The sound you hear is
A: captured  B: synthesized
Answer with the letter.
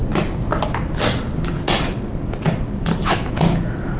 A